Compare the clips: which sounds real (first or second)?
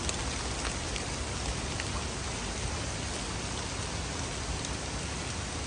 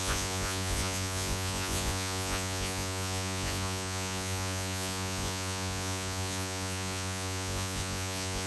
first